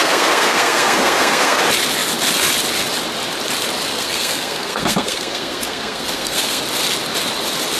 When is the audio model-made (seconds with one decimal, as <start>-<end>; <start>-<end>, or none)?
0.0-1.6; 3.9-6.6